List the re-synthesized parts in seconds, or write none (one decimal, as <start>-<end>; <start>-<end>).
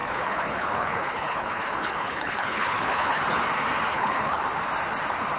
0.0-3.2; 3.9-4.4